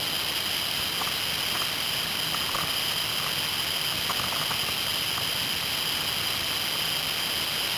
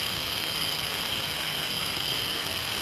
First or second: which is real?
first